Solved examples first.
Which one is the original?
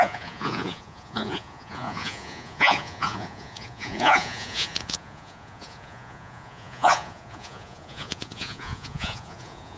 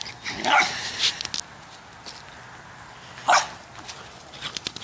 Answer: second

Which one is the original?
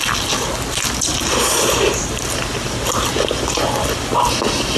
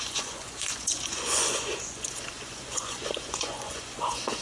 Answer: first